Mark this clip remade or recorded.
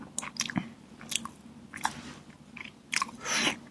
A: recorded